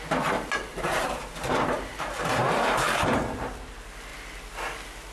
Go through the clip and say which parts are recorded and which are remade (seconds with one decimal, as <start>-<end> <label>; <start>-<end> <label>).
0.0-0.7 recorded; 0.7-3.2 remade; 3.2-5.1 recorded